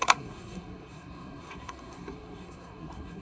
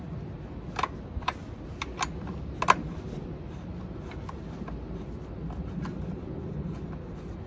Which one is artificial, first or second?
first